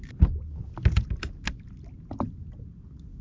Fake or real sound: real